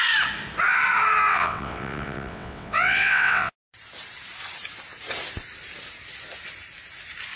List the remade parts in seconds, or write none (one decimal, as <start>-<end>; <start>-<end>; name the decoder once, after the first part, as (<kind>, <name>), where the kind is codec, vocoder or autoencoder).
1.3-3.5 (vocoder, WaveNeXt)